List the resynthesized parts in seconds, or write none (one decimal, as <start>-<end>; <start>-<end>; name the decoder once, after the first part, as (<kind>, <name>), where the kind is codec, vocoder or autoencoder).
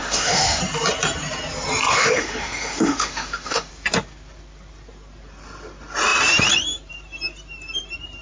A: 0.0-0.6 (autoencoder, DAC-VAE); 1.9-3.7